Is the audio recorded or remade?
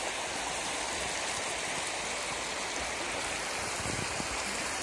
recorded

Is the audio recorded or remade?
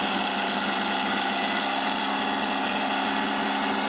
recorded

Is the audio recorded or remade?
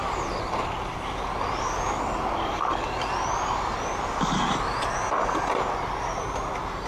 recorded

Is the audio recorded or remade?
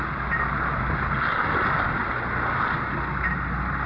recorded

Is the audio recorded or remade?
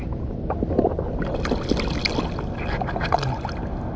recorded